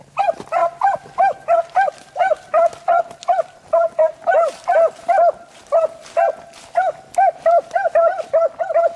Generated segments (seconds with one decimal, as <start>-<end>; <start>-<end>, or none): none